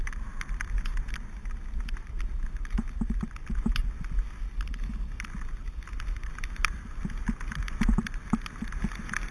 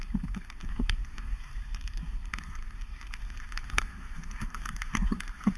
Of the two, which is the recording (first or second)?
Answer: first